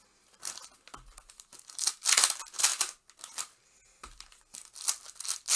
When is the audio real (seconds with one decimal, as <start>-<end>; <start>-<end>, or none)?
0.0-5.6

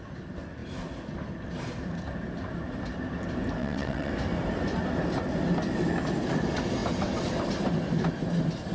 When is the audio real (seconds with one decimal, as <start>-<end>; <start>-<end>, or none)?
0.0-3.6; 4.1-8.7